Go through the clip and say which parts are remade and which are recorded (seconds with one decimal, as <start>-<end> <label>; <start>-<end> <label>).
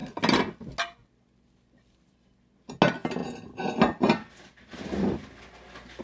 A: 0.0-6.0 recorded